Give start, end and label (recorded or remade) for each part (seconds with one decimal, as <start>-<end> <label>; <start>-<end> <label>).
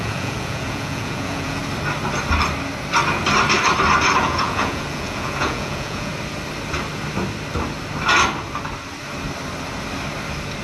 0.0-1.6 remade; 1.6-4.2 recorded; 4.2-6.1 remade; 6.1-10.6 recorded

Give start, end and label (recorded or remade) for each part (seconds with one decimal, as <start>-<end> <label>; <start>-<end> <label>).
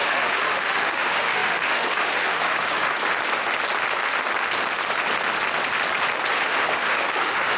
0.0-2.9 remade; 2.9-6.3 recorded; 6.3-7.6 remade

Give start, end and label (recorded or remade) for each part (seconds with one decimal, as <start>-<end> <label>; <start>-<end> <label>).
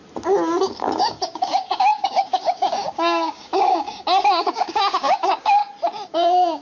0.0-0.6 recorded; 0.6-5.6 remade; 5.6-6.1 recorded; 6.1-6.6 remade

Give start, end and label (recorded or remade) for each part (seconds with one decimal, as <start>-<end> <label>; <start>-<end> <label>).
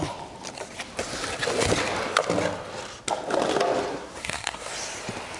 0.0-3.9 recorded; 3.9-4.7 remade; 4.7-5.4 recorded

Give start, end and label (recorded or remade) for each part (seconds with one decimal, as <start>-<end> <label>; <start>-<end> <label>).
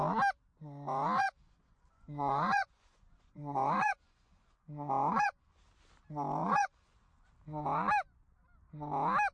0.0-1.2 recorded; 1.2-5.6 remade; 5.6-6.4 recorded; 6.4-7.3 remade; 7.3-9.3 recorded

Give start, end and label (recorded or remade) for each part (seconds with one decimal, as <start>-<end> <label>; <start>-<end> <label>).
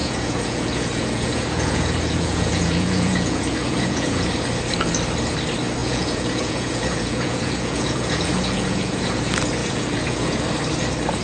0.0-4.3 remade; 4.3-5.8 recorded; 5.8-9.2 remade; 9.2-9.6 recorded; 9.6-10.4 remade; 10.4-11.2 recorded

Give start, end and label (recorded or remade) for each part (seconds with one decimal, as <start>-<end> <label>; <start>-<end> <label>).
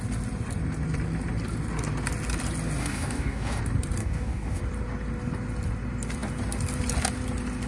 0.0-2.8 recorded; 2.8-3.6 remade; 3.6-4.0 recorded; 4.0-4.6 remade; 4.6-7.7 recorded